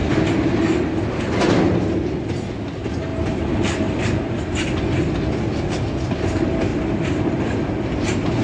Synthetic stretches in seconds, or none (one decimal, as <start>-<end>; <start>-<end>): none